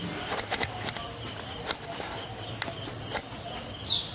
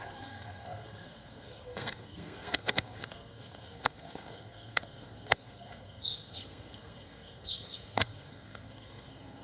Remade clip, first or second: second